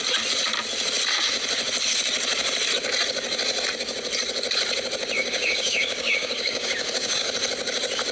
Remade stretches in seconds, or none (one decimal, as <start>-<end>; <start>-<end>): 5.2-7.3